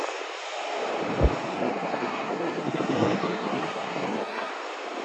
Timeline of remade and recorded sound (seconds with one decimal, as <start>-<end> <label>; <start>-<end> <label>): 0.0-1.5 recorded; 1.5-4.5 remade; 4.5-5.0 recorded